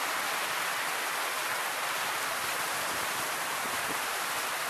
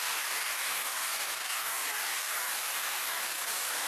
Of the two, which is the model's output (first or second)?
second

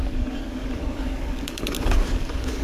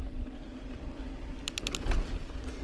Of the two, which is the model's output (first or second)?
first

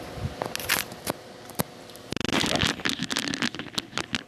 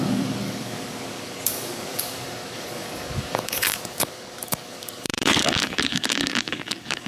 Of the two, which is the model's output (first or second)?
second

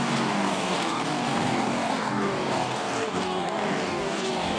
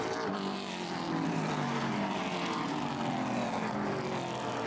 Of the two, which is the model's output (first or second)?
first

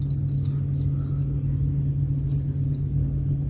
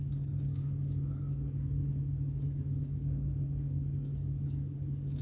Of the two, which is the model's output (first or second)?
second